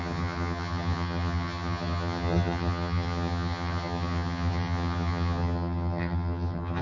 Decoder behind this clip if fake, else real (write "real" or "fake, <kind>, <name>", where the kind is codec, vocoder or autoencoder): fake, vocoder, HiFi-GAN